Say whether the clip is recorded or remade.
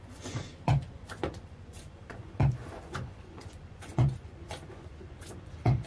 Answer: remade